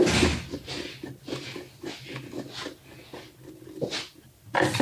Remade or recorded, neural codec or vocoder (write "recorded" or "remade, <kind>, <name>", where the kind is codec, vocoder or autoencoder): recorded